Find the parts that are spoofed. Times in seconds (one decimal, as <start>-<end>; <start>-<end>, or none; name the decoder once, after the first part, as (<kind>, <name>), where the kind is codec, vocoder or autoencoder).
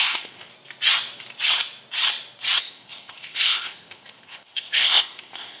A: 0.0-0.5 (codec, ZipCodec); 2.6-5.6